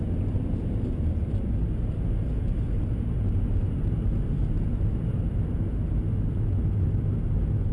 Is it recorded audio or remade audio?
recorded